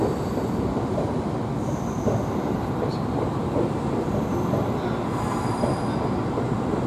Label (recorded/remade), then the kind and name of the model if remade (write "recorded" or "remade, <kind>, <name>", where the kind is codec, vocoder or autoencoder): recorded